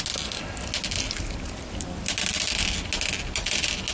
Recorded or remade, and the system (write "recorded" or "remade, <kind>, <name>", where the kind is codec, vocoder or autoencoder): recorded